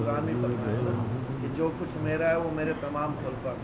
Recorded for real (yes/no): yes